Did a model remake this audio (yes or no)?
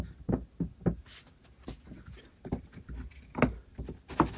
no